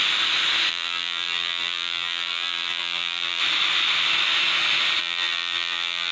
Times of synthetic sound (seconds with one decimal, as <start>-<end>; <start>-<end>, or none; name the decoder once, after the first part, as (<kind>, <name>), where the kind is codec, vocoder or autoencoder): 0.7-3.4 (vocoder, BigVGAN v2); 5.0-6.1